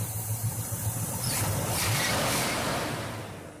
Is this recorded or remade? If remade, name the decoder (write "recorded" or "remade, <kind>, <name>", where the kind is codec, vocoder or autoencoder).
remade, vocoder, BigVGAN v2